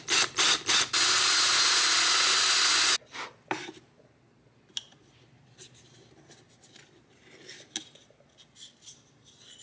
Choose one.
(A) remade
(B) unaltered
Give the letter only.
B